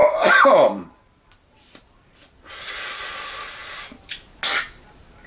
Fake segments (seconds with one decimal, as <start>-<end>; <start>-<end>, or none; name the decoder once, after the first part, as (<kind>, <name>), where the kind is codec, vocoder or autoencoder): 0.0-2.5 (vocoder, BigVGAN v2)